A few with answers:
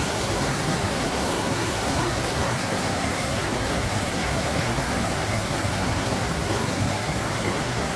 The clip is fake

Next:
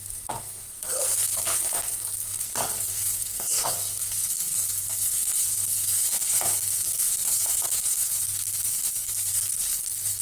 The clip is fake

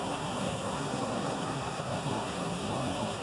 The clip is fake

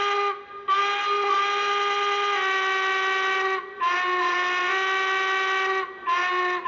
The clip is real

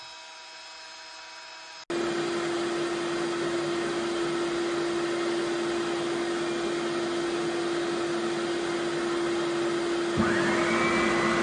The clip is real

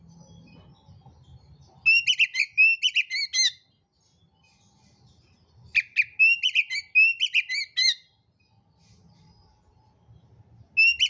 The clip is real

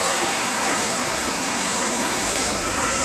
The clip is fake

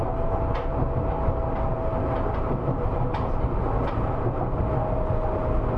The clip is real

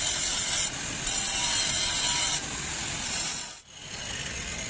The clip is real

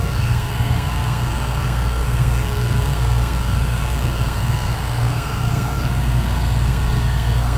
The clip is fake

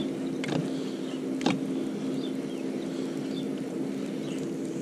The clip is real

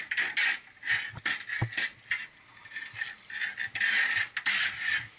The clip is real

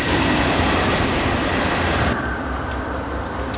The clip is real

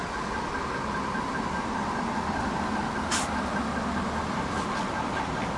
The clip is real